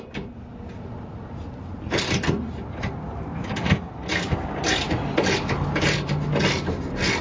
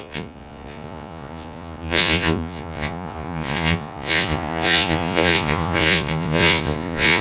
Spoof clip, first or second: second